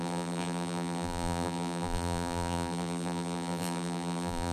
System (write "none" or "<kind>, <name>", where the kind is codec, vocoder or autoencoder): vocoder, BigVGAN v2